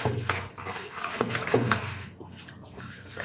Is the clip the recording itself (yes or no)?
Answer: no